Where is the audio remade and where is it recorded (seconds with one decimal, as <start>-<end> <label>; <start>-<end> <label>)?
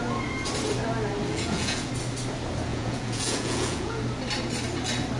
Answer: 0.0-1.3 recorded; 1.3-1.9 remade; 1.9-2.7 recorded; 2.7-4.0 remade; 4.0-5.2 recorded